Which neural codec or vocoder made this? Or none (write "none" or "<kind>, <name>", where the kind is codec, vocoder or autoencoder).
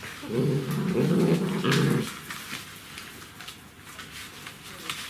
none